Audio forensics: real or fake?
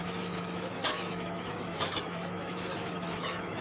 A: fake